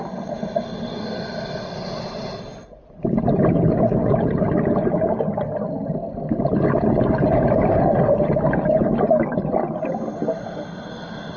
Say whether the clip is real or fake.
real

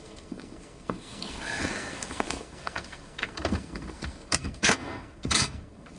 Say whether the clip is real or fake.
fake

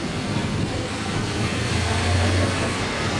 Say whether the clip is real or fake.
fake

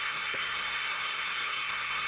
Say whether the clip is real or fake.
fake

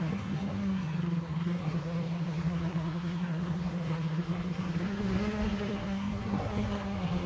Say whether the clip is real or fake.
fake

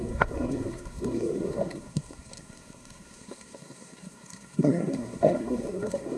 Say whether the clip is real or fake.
fake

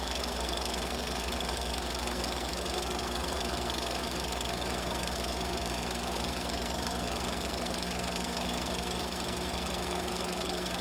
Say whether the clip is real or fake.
fake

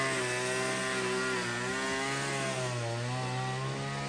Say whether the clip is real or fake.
real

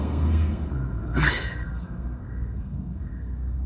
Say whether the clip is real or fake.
fake